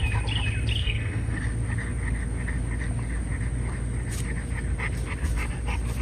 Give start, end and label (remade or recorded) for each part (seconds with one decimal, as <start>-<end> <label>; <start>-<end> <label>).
0.0-0.8 recorded; 0.8-1.4 remade; 1.4-6.0 recorded